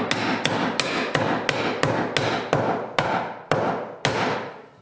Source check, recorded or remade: recorded